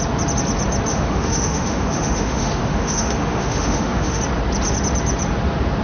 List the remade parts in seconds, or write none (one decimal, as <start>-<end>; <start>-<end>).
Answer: 0.9-4.2